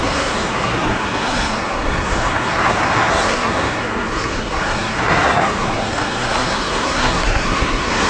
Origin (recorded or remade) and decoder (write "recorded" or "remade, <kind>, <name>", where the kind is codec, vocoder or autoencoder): remade, codec, SNAC